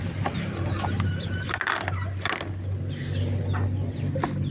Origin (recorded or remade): recorded